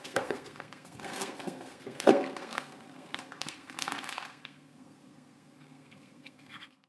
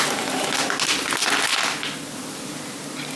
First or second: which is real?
second